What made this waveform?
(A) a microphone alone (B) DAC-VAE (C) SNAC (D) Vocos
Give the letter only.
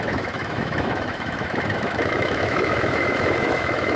B